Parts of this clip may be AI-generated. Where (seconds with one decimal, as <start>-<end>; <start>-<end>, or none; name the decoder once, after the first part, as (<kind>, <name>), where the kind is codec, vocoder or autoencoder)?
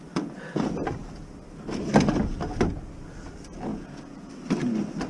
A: 3.7-4.3 (vocoder, Vocos)